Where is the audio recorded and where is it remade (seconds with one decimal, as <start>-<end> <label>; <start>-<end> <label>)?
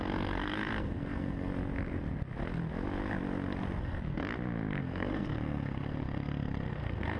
0.0-1.5 remade; 1.5-3.8 recorded; 3.8-4.2 remade; 4.2-4.8 recorded; 4.8-7.2 remade